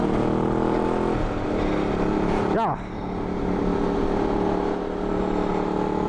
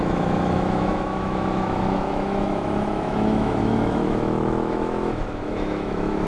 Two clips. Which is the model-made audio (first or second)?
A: second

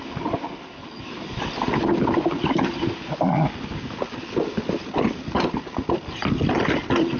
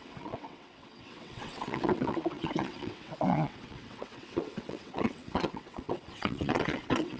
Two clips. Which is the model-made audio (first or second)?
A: second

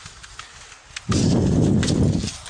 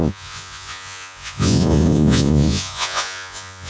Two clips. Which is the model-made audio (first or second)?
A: second